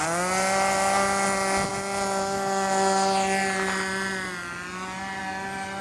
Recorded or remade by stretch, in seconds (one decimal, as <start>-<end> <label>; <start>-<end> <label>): 0.0-5.8 recorded